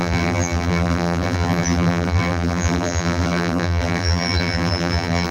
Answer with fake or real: fake